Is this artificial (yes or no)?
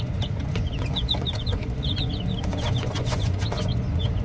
yes